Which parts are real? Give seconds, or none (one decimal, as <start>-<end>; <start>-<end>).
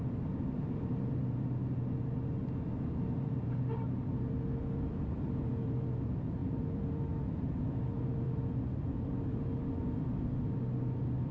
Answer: none